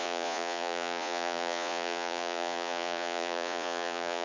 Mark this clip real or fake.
fake